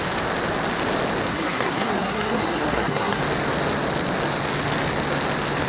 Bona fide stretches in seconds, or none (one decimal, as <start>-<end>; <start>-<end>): 0.0-1.3; 3.2-5.7